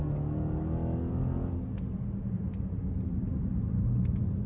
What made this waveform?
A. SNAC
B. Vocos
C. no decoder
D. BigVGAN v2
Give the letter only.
C